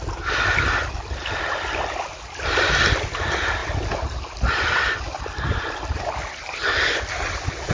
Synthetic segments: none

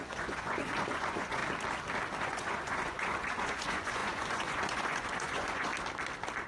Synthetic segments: 0.0-1.4; 2.2-5.7